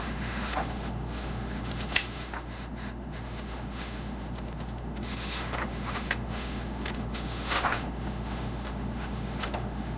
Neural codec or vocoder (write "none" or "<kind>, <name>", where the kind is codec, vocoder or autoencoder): autoencoder, DAC-VAE